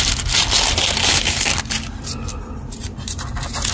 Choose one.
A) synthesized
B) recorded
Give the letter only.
B